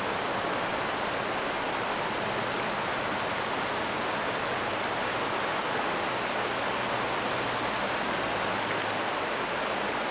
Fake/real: real